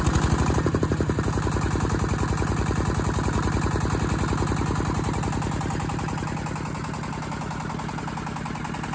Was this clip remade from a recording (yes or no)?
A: no